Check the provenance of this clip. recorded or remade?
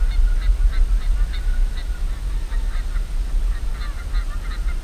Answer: recorded